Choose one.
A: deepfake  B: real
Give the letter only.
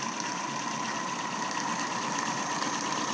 B